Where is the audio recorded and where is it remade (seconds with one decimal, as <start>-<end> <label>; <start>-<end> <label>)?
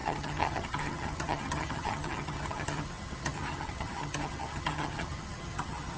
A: 0.0-6.0 remade